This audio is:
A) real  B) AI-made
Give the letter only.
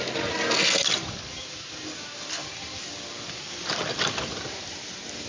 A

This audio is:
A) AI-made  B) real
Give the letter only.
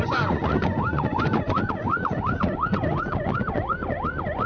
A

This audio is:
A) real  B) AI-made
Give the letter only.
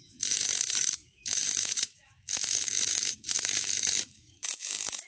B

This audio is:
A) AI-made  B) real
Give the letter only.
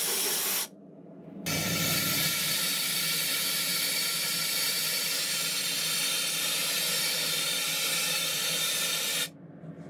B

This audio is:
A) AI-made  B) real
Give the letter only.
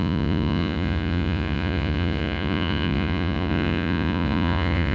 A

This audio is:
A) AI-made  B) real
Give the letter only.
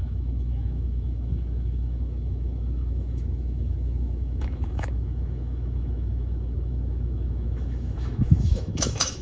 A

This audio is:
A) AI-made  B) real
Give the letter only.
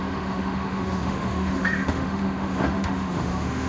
A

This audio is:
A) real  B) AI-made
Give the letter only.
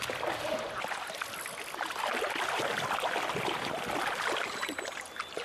A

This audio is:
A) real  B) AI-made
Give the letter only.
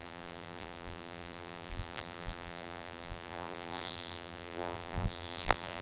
B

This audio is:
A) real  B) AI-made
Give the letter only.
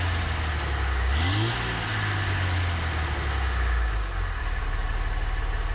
A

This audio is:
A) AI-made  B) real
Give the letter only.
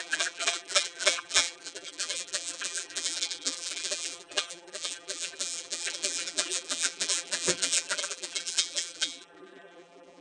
A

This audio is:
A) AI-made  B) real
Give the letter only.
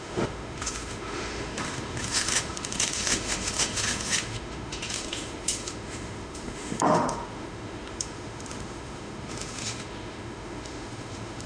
A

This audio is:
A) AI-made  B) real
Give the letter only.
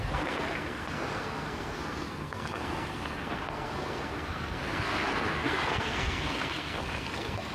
A